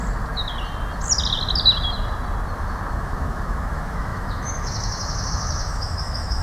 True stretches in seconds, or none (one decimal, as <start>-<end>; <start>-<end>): 0.0-2.9